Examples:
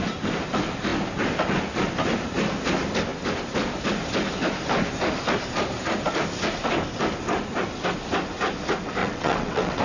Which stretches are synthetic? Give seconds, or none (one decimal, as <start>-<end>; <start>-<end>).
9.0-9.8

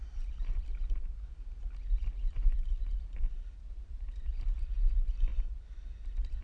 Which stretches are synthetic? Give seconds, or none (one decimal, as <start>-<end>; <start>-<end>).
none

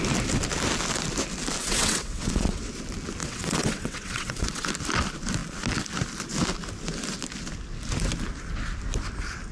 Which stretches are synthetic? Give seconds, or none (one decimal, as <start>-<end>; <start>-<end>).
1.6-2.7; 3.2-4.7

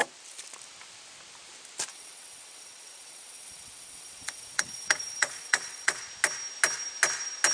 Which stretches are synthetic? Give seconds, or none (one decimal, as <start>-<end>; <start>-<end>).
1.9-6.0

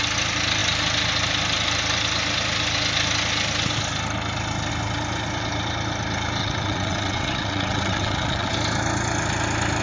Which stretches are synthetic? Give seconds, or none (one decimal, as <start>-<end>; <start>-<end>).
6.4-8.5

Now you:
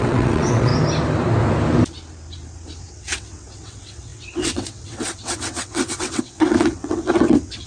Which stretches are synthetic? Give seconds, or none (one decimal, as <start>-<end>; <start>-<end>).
0.0-0.7; 2.9-7.7